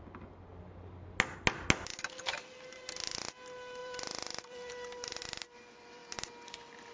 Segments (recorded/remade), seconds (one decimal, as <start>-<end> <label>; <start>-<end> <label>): 0.0-0.5 remade; 0.5-2.2 recorded; 2.2-6.0 remade; 6.0-6.5 recorded; 6.5-6.9 remade